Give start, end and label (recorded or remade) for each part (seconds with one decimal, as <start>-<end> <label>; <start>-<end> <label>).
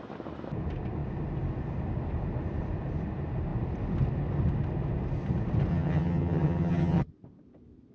0.0-5.7 recorded; 5.7-7.1 remade; 7.1-7.9 recorded